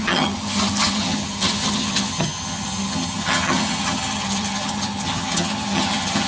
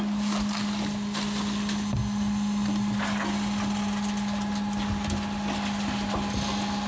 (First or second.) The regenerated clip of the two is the first